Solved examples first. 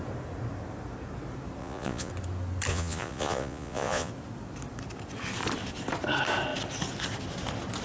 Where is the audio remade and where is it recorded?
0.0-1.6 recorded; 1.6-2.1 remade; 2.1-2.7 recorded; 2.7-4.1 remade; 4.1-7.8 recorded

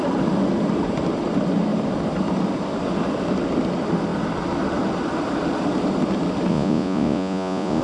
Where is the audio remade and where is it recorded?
0.0-6.5 recorded; 6.5-7.8 remade

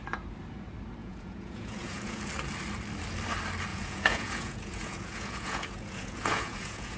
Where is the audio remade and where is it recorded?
0.0-1.0 recorded; 1.0-2.2 remade; 2.2-3.7 recorded; 3.7-7.0 remade

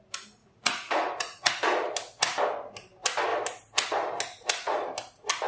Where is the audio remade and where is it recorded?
0.0-0.4 recorded; 0.4-1.5 remade; 1.5-5.5 recorded

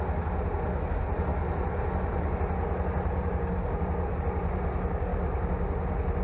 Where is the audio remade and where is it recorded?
0.0-6.2 recorded

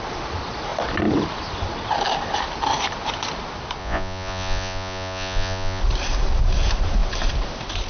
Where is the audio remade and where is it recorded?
0.0-3.8 recorded; 3.8-5.8 remade; 5.8-7.9 recorded